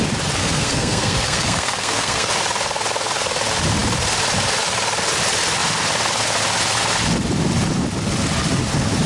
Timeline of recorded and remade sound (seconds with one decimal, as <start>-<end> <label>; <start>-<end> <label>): 0.0-0.4 recorded; 0.4-2.3 remade; 2.3-9.1 recorded